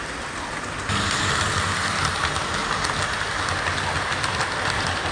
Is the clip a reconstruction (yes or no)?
no